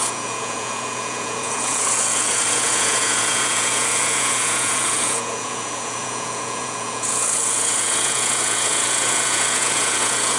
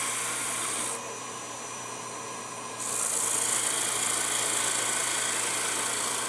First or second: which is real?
second